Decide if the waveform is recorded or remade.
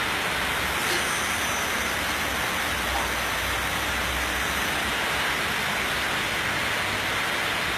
recorded